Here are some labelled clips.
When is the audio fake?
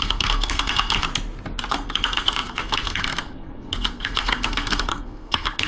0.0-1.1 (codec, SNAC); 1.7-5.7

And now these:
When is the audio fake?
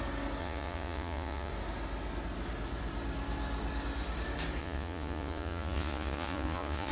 0.4-1.5 (vocoder, Vocos); 4.6-6.9